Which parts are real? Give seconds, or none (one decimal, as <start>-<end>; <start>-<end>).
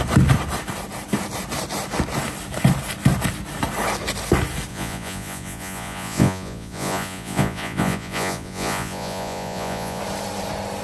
0.0-4.7; 10.0-10.8